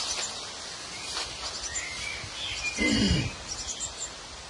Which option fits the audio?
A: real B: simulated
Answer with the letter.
A